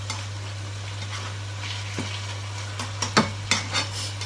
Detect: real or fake real